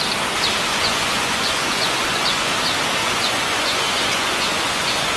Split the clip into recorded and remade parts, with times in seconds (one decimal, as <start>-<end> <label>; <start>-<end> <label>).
0.0-0.7 recorded; 0.7-2.5 remade; 2.5-3.0 recorded; 3.0-5.2 remade